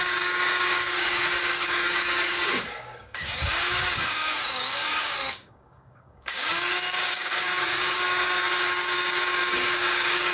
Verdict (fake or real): fake